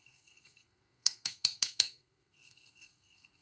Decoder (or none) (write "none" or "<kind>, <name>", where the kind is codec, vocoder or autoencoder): codec, SNAC